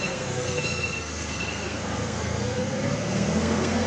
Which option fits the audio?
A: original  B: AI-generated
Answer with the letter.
B